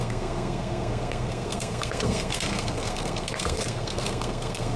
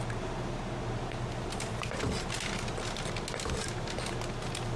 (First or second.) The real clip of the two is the second